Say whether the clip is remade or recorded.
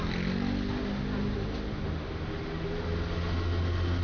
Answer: recorded